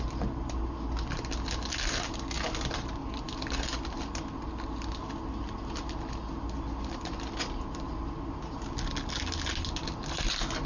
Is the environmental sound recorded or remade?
recorded